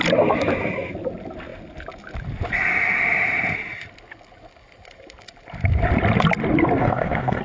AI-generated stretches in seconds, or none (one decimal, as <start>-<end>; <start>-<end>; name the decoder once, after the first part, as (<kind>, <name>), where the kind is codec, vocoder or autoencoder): 6.8-7.4 (codec, SNAC)